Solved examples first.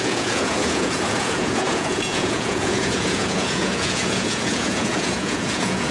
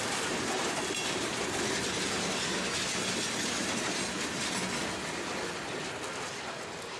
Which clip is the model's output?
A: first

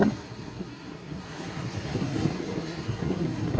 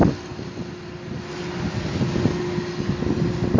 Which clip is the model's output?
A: first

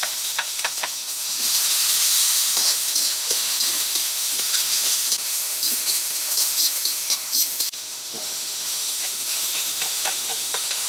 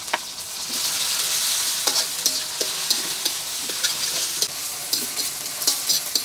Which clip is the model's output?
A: first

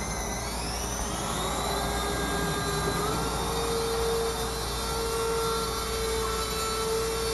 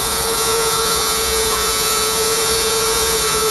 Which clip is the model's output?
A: second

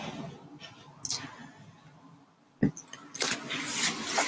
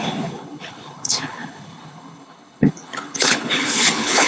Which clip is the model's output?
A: second